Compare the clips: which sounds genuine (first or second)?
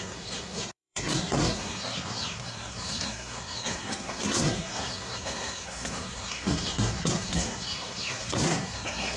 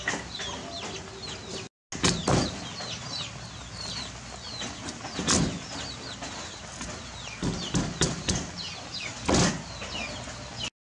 second